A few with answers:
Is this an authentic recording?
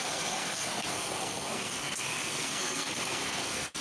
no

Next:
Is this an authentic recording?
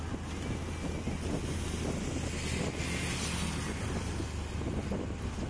yes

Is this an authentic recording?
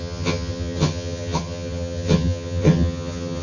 no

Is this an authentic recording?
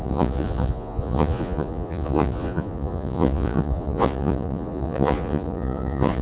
no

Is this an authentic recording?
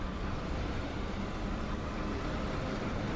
yes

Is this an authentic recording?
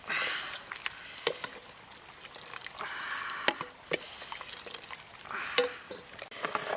yes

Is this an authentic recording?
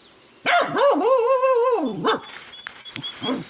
no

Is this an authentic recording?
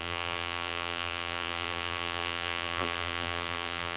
no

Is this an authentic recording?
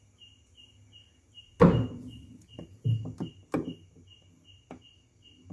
yes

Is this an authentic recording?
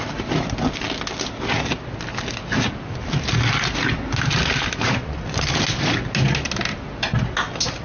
yes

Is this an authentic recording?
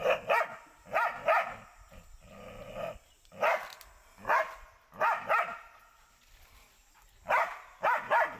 yes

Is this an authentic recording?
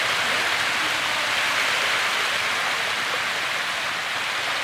yes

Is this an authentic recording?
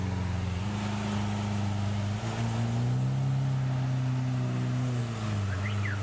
yes